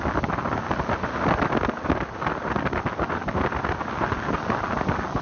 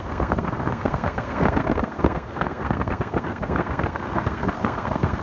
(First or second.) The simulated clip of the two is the second